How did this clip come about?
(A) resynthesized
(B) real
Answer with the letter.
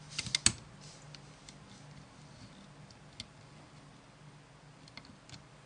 B